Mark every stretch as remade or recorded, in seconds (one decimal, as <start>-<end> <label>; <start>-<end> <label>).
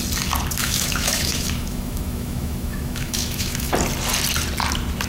0.0-0.6 recorded; 0.6-3.7 remade; 3.7-5.1 recorded